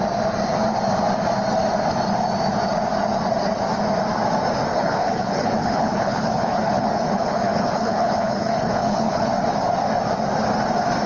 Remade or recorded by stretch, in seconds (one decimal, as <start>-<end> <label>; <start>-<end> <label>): 0.0-4.7 recorded; 4.7-9.3 remade; 9.3-11.1 recorded